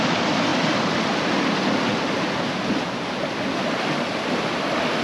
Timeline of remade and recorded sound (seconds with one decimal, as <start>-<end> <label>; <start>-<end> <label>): 0.0-5.0 recorded